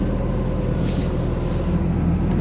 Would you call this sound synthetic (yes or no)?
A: no